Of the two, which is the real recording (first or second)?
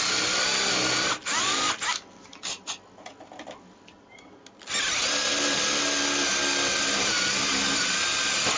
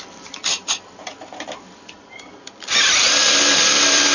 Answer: first